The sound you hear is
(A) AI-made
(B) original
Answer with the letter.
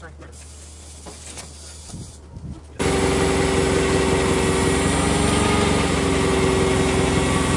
B